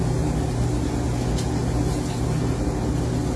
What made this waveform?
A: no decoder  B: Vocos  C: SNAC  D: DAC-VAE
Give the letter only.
A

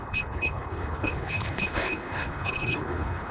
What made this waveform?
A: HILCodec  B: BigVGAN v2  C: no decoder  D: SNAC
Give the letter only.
A